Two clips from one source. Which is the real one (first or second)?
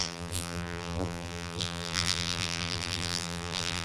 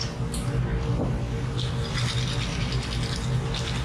second